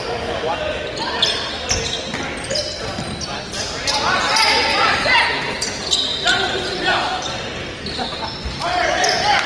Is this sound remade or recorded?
recorded